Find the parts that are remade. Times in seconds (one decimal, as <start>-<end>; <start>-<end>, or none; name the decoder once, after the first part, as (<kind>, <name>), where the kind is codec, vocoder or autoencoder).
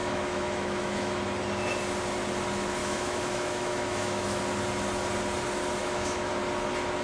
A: 0.0-1.2 (autoencoder, DAC-VAE); 2.8-4.4; 5.8-6.3